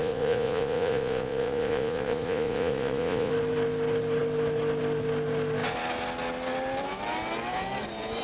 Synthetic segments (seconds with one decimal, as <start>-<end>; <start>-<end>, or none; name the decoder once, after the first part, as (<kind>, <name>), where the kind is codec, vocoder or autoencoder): 0.0-3.3 (vocoder, Vocos)